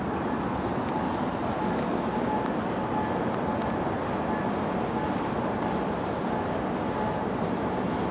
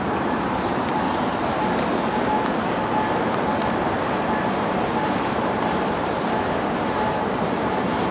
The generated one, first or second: second